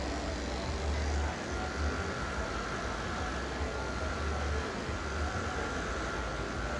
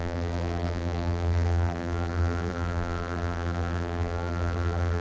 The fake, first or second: second